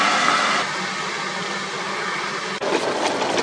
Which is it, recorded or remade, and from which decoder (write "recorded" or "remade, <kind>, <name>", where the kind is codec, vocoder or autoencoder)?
recorded